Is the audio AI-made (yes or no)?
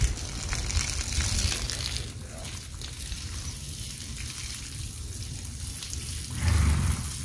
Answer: no